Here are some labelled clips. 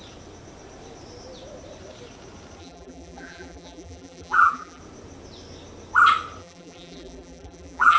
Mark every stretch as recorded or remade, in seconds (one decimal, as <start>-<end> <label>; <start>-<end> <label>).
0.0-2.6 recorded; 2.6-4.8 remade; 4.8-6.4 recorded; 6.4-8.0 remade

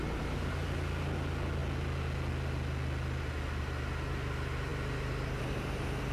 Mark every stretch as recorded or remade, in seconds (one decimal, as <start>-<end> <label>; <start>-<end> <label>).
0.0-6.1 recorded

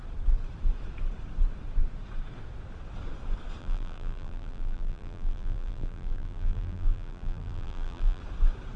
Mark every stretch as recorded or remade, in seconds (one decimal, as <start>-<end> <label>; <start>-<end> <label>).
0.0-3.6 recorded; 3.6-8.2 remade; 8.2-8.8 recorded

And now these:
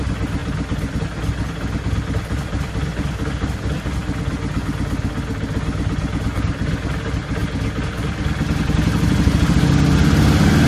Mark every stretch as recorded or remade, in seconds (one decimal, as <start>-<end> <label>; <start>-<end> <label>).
0.0-0.4 recorded; 0.4-1.2 remade; 1.2-10.7 recorded

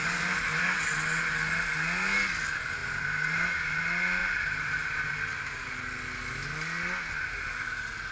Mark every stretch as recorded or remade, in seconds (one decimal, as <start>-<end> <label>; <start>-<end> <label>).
0.0-0.6 remade; 0.6-2.8 recorded; 2.8-3.8 remade; 3.8-4.2 recorded; 4.2-5.1 remade; 5.1-8.1 recorded

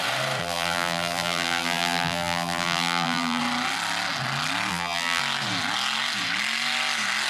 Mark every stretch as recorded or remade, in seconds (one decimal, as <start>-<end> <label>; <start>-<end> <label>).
0.0-0.4 recorded; 0.4-3.4 remade; 3.4-4.7 recorded; 4.7-5.2 remade; 5.2-7.3 recorded